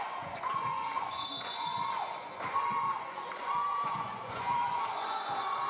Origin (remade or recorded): remade